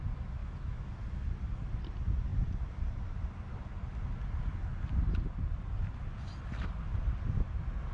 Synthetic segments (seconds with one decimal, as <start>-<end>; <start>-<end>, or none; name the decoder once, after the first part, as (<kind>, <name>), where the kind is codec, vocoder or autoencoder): 0.4-0.9 (autoencoder, DAC-VAE)